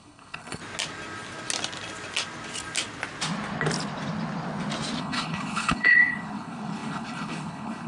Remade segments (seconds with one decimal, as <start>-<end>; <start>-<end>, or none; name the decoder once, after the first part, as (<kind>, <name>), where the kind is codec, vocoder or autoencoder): 0.0-0.6 (codec, HILCodec); 5.0-7.9